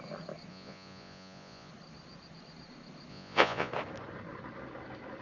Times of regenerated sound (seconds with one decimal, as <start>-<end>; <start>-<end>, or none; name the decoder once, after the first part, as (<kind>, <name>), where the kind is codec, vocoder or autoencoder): 0.5-1.7 (vocoder, Vocos); 3.1-3.7